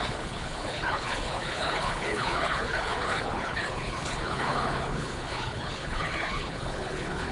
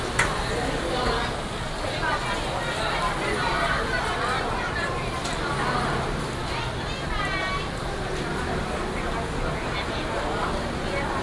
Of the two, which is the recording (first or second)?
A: second